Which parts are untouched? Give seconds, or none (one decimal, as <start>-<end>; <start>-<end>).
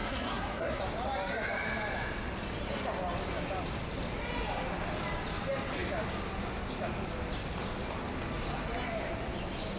0.8-9.8